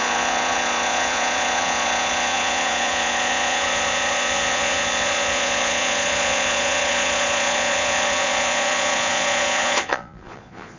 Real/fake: fake